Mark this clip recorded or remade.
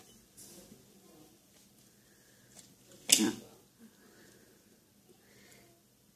recorded